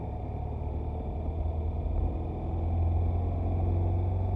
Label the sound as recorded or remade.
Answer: recorded